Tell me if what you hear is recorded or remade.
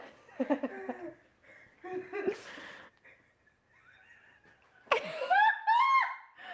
recorded